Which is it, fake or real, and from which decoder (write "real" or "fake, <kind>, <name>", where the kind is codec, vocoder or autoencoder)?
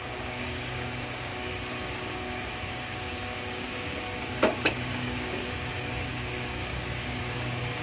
fake, codec, DAC